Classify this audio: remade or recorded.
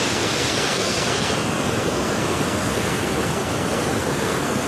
remade